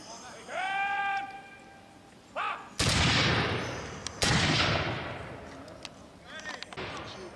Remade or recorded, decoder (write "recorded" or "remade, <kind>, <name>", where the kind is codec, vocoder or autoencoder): recorded